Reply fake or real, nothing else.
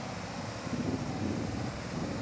fake